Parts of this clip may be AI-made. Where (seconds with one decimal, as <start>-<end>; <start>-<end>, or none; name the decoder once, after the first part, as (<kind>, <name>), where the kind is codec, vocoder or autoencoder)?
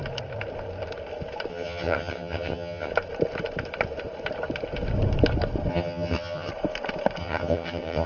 1.5-2.9 (vocoder, HiFi-GAN); 5.7-6.5; 7.2-8.1